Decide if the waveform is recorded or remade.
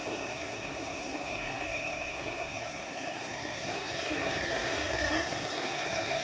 remade